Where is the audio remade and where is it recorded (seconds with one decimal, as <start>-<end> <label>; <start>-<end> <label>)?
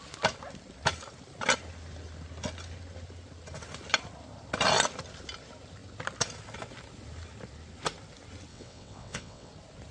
0.0-8.5 recorded; 8.5-9.5 remade; 9.5-9.9 recorded